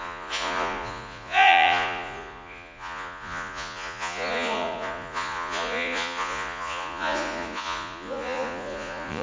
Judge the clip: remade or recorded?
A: remade